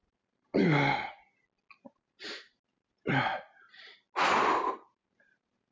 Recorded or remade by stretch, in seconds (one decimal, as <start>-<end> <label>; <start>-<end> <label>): 0.0-0.5 remade; 0.5-1.8 recorded; 1.8-3.3 remade; 3.3-4.7 recorded; 4.7-5.7 remade